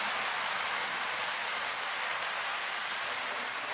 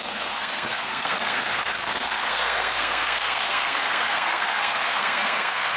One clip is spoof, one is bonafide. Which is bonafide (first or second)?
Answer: first